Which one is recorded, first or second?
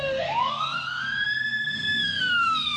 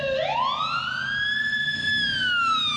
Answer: second